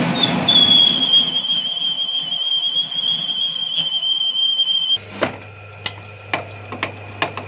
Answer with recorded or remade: recorded